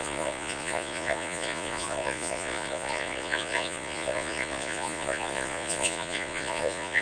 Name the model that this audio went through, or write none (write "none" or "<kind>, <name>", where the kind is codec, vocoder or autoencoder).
vocoder, Vocos